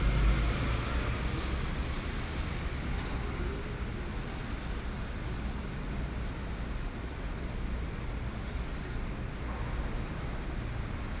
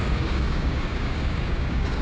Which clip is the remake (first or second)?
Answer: second